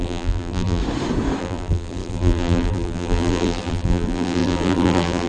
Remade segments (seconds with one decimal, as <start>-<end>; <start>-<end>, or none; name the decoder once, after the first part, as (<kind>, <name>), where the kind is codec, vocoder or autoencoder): 0.0-0.8 (vocoder, BigVGAN v2); 1.4-5.3